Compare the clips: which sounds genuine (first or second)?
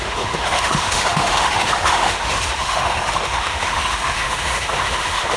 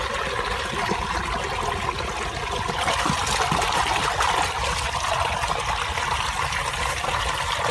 second